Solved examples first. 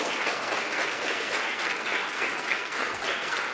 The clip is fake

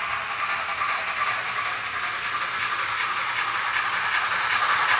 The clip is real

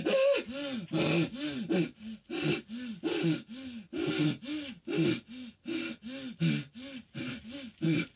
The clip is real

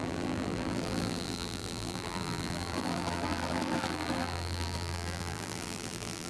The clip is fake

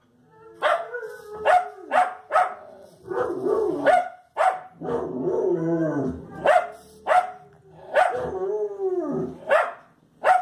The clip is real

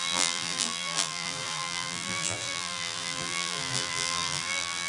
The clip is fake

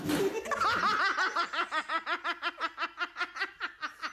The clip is real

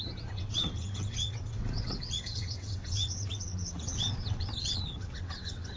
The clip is fake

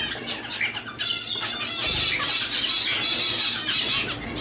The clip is real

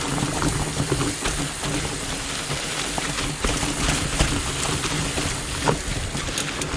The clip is real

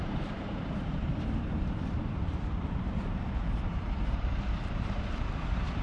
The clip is fake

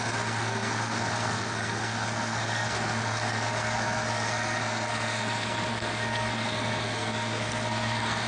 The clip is fake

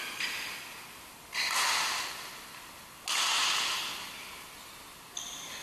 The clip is real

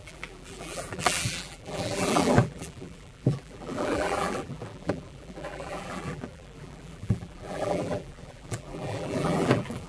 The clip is fake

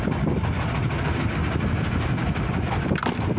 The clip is real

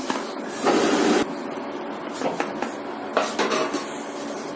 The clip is real